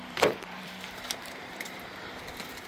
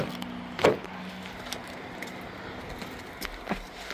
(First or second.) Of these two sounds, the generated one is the first